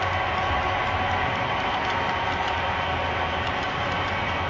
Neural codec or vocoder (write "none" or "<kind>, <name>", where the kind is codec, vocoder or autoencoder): none